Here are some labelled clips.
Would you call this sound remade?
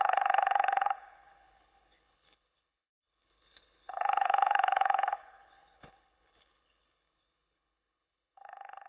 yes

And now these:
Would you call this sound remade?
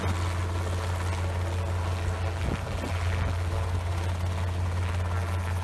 no